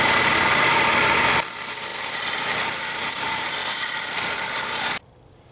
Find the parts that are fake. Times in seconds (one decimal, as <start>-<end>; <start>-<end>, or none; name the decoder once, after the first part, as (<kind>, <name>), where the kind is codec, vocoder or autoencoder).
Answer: 0.0-1.9 (vocoder, BigVGAN v2); 2.5-5.5